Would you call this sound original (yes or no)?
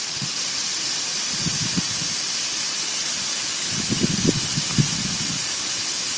yes